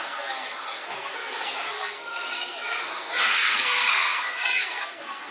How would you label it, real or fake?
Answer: fake